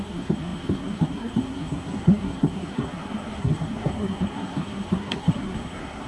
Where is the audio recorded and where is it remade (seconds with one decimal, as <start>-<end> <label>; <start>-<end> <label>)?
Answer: 0.0-6.1 remade